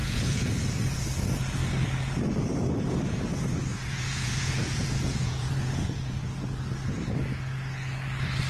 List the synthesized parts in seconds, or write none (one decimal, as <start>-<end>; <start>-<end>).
0.0-0.5; 3.7-6.3